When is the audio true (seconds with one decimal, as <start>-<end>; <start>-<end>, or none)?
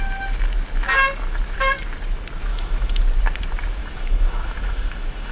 0.0-2.5; 3.0-3.8